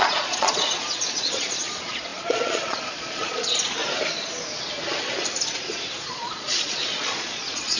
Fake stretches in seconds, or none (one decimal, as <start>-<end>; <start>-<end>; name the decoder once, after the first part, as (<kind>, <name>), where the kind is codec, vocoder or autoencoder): 0.0-3.8 (vocoder, Vocos); 6.0-7.8